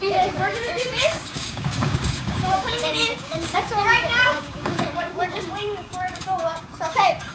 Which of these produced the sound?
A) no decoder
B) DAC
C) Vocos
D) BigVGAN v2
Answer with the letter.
B